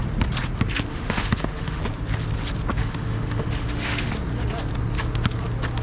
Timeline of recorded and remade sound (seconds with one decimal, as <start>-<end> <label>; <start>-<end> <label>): 0.0-0.9 recorded; 0.9-1.8 remade; 1.8-2.8 recorded; 2.8-4.1 remade; 4.1-5.8 recorded